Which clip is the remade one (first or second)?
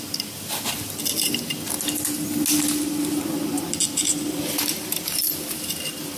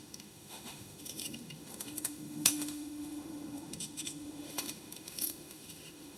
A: second